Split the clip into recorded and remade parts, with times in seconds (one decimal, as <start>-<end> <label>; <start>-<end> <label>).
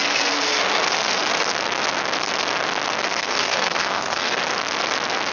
0.0-3.2 recorded; 3.2-4.4 remade; 4.4-5.3 recorded